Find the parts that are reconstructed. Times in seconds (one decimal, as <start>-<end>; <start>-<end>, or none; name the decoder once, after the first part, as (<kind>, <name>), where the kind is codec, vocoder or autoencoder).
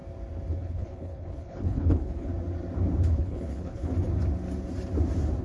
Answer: 0.6-2.3 (codec, HILCodec); 3.1-3.9